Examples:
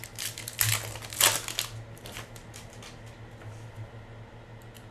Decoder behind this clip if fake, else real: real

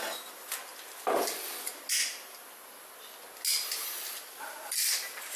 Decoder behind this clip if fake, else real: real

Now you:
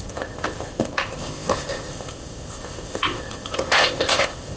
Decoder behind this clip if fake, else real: fake, codec, ZipCodec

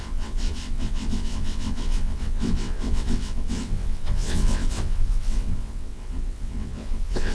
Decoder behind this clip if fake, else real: fake, vocoder, WaveNeXt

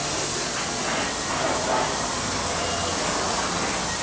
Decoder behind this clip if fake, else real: real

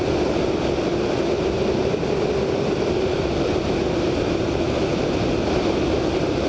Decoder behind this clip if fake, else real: real